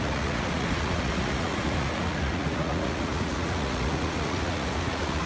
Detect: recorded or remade remade